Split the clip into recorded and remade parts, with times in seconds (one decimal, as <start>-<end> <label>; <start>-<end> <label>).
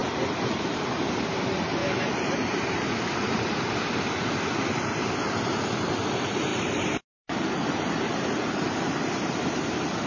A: 0.0-0.9 remade; 0.9-1.8 recorded; 1.8-3.7 remade; 3.7-6.5 recorded; 6.5-9.1 remade; 9.1-10.1 recorded